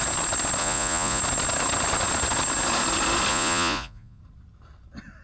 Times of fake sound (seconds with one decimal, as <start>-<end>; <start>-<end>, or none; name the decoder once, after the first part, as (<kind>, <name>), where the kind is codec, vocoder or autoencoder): 0.6-1.2 (vocoder, Vocos); 3.3-4.2